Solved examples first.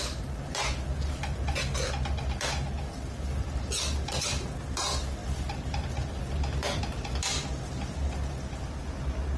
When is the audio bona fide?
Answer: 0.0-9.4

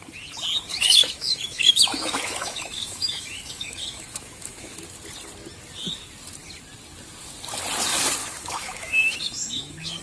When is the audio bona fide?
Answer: 0.0-0.7; 4.8-8.2

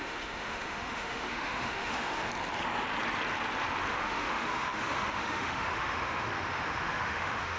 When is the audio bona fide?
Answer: 2.2-3.9

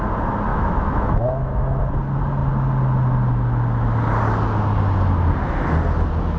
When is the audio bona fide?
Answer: 0.0-0.5; 1.8-6.4

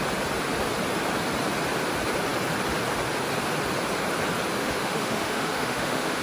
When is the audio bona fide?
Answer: 0.0-4.6

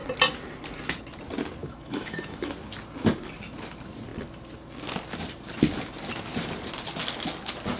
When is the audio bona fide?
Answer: 0.0-1.6; 2.5-7.8

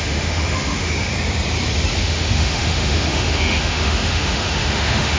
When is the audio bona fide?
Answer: 1.1-2.0